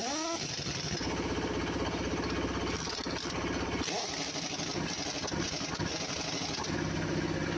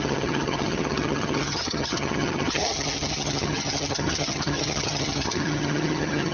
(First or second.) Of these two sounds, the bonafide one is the first